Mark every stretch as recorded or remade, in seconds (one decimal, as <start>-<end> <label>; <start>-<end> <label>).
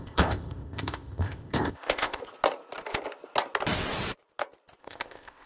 0.0-2.2 remade; 2.2-4.8 recorded; 4.8-5.5 remade